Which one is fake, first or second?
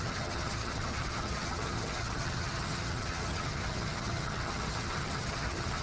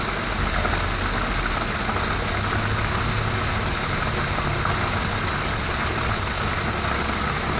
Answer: first